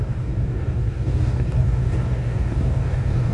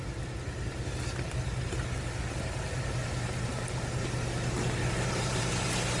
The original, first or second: second